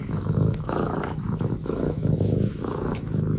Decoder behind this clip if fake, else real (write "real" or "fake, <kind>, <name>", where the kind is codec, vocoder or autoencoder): fake, autoencoder, DAC-VAE